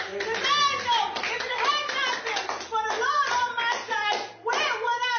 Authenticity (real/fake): real